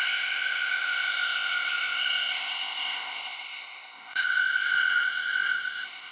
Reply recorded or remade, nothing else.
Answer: remade